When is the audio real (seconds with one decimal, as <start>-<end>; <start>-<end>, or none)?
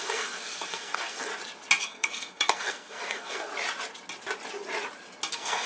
1.3-1.8; 3.5-5.3